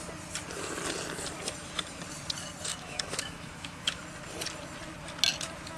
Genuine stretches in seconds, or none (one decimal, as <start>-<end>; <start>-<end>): 0.0-2.7; 4.0-5.8